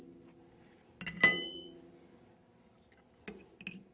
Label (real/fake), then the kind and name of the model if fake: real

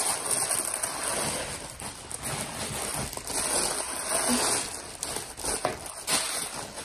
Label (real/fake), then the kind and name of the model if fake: real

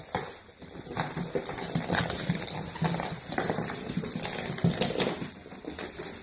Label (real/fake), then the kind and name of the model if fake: real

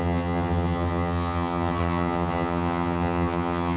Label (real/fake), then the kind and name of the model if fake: fake, vocoder, HiFi-GAN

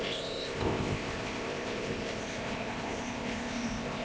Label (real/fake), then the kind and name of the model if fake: fake, codec, ZipCodec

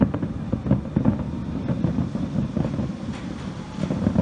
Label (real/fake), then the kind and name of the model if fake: fake, vocoder, BigVGAN v2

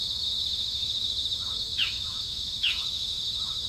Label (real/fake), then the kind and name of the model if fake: fake, autoencoder, DAC-VAE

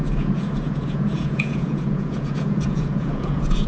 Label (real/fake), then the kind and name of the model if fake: fake, vocoder, Vocos